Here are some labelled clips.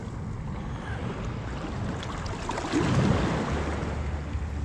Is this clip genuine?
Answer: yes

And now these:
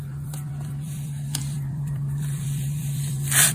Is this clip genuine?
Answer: no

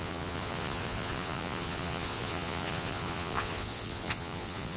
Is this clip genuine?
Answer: no